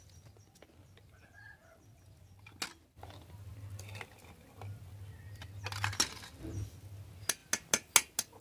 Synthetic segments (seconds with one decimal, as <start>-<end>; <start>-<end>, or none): none